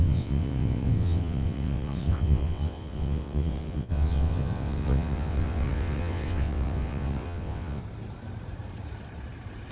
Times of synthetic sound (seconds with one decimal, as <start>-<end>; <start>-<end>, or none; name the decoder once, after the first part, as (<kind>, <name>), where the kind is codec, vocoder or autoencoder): 0.0-7.8 (vocoder, WaveNeXt)